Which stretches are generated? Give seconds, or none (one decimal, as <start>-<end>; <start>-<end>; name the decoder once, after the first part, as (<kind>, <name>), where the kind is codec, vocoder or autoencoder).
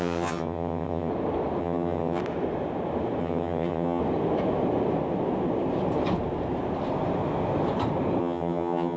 0.0-1.1 (vocoder, HiFi-GAN); 1.6-2.2; 3.2-4.0; 8.2-9.0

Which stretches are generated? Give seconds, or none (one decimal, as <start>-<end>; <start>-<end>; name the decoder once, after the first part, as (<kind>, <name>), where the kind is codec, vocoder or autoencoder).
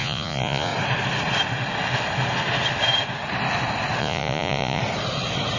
0.0-0.7 (vocoder, Vocos); 4.0-4.8